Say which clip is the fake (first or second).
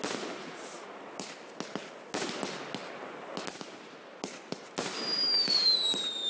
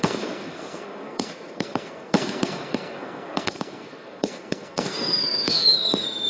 second